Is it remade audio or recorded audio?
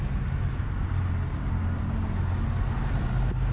recorded